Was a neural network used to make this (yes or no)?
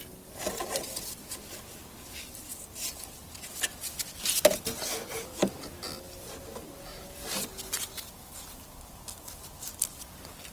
no